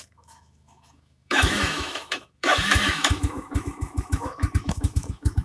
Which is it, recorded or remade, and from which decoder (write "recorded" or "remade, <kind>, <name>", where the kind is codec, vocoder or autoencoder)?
remade, autoencoder, DAC-VAE